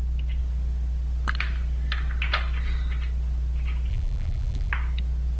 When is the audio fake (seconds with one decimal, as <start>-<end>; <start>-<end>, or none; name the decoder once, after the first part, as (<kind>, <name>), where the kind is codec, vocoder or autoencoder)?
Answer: 3.9-4.7 (vocoder, BigVGAN v2)